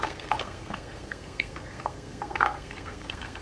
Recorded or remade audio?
remade